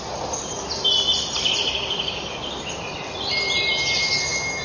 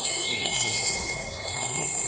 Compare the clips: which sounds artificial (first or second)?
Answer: second